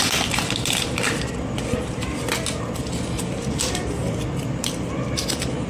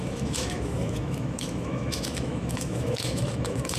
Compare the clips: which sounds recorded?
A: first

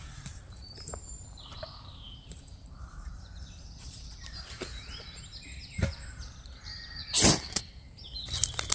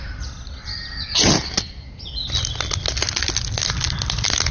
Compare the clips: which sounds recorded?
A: second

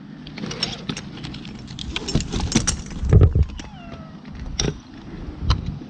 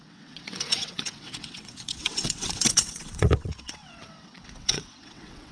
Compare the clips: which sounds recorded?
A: first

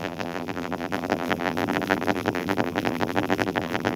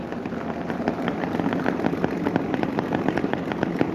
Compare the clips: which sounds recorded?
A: second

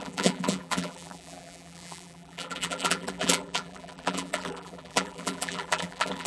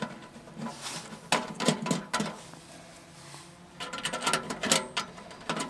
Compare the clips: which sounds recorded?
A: second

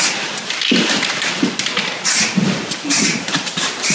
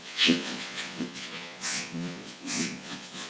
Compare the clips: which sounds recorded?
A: first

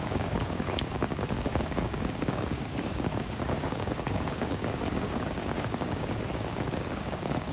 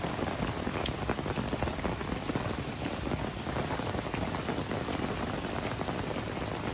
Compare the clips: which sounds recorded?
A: second